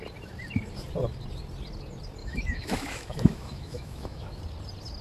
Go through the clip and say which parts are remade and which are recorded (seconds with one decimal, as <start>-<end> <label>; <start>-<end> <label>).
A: 0.0-2.2 recorded; 2.2-4.4 remade; 4.4-5.0 recorded